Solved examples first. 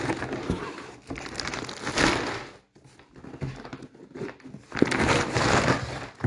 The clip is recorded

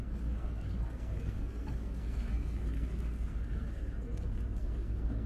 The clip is remade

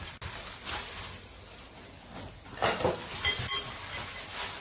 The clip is recorded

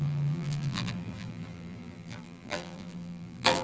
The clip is remade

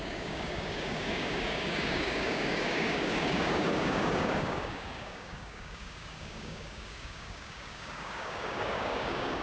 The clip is remade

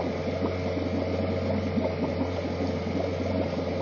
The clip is recorded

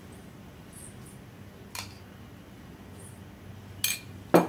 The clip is recorded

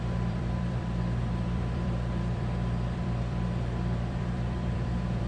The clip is remade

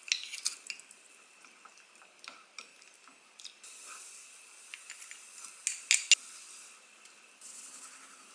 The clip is recorded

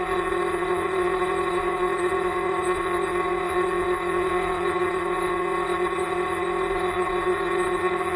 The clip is remade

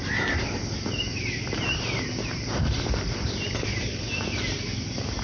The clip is recorded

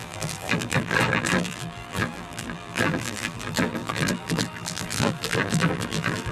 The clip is remade